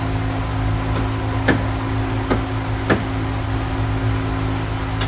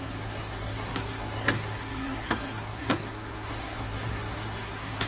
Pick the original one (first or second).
first